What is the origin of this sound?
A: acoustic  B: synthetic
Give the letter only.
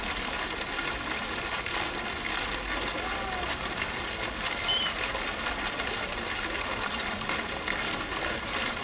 A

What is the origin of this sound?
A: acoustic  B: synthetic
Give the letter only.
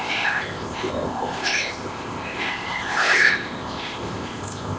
B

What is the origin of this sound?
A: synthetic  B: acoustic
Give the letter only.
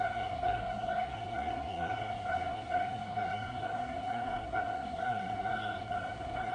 A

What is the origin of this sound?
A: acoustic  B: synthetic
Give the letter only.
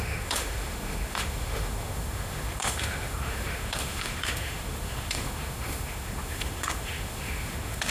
B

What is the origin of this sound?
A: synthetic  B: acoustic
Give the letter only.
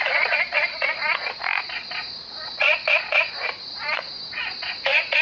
A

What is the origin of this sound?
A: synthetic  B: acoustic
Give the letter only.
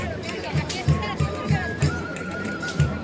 A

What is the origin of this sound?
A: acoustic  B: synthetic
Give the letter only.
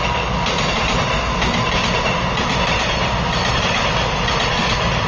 A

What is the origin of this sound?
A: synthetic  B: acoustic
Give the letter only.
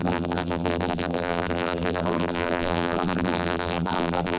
A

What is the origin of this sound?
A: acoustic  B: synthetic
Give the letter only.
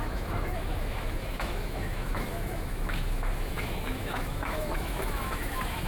B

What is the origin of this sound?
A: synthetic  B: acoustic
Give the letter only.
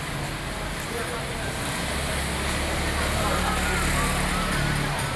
B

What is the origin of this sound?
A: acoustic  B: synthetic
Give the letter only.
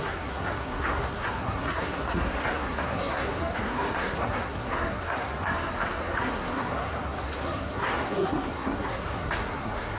B